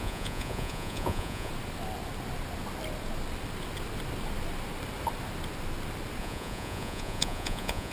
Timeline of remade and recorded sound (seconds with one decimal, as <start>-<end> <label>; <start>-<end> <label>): 0.0-1.5 remade; 1.5-6.2 recorded; 6.2-7.9 remade